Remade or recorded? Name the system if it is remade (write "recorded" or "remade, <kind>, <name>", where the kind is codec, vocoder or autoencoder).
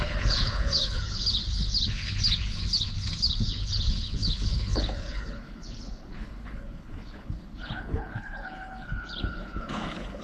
remade, codec, HILCodec